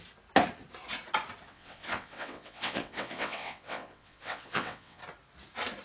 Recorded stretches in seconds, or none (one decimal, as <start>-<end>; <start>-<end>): 0.0-1.5; 5.0-5.8